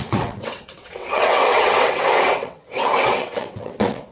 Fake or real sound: fake